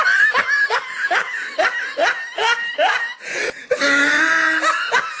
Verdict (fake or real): real